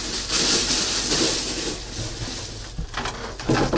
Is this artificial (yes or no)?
no